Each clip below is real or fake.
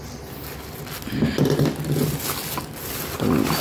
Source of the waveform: real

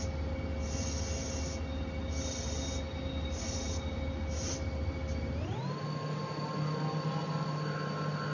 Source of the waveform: real